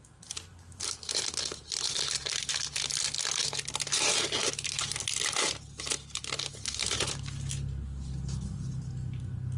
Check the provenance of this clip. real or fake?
real